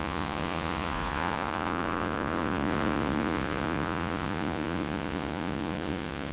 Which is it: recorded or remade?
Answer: remade